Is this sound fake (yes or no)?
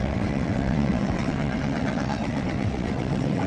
yes